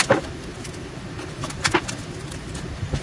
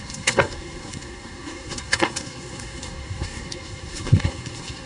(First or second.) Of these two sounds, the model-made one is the second